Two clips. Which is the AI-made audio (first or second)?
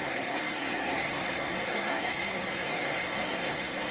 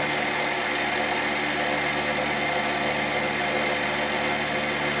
first